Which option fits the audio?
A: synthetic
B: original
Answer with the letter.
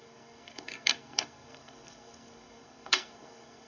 A